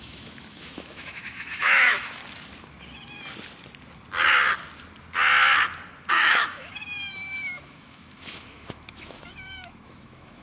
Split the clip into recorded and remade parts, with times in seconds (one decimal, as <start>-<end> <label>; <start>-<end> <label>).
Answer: 0.0-2.2 remade; 2.2-6.1 recorded; 6.1-10.4 remade